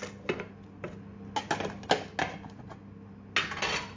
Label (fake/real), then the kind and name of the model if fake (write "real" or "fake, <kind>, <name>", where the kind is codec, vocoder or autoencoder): real